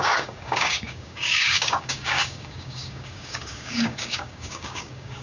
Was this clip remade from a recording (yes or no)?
yes